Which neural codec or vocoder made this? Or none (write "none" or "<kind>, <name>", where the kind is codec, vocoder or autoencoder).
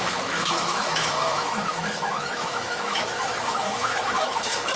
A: autoencoder, DAC-VAE